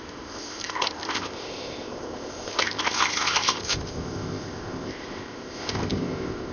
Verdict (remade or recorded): remade